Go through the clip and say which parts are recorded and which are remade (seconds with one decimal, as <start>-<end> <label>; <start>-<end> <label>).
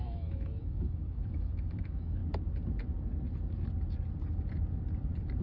0.0-2.2 remade; 2.2-5.4 recorded